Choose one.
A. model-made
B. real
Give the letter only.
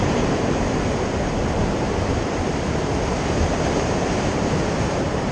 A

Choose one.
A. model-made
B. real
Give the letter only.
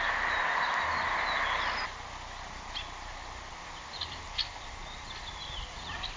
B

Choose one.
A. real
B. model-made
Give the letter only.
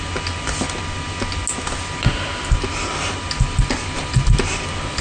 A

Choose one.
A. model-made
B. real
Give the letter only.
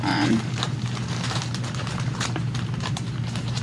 A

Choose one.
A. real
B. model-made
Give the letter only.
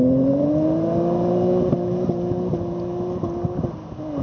A